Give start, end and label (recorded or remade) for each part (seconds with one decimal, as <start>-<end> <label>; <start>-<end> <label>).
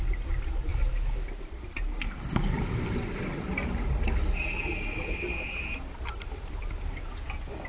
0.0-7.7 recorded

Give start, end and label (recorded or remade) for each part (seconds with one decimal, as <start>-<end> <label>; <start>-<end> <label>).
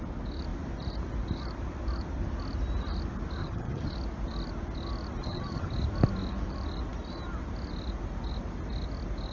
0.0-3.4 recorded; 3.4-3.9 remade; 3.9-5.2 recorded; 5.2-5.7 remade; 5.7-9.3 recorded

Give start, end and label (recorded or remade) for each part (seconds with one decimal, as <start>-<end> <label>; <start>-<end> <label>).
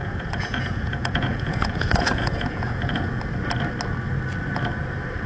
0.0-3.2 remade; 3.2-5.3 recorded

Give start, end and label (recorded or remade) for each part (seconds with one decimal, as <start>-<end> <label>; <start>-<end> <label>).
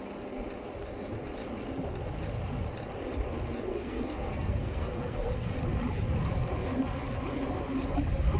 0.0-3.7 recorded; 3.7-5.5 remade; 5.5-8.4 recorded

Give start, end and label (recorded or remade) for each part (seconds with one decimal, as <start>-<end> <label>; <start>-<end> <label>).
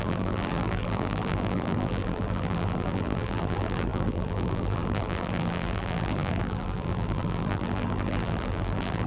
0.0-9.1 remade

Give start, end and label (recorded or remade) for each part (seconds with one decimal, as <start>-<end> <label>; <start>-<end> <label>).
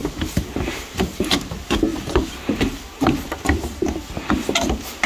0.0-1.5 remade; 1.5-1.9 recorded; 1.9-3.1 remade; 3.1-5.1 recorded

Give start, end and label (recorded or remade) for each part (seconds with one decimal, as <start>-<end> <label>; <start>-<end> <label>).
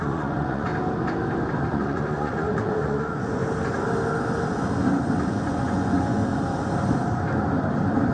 0.0-0.7 remade; 0.7-1.7 recorded; 1.7-3.4 remade; 3.4-5.2 recorded; 5.2-6.2 remade; 6.2-8.1 recorded